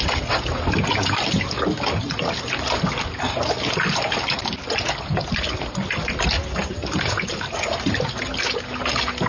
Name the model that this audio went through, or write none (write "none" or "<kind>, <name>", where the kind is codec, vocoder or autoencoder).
none